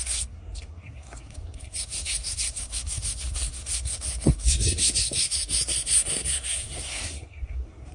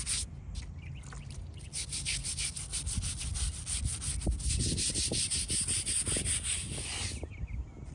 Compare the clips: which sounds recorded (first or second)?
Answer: second